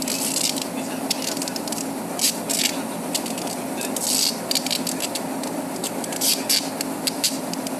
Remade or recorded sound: recorded